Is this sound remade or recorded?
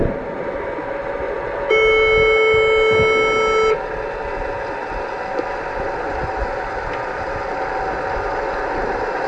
recorded